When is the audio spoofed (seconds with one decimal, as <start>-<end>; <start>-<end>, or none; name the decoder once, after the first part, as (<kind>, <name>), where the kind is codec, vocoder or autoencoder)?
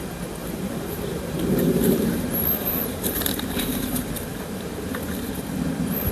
0.4-3.9 (vocoder, BigVGAN v2); 4.3-5.1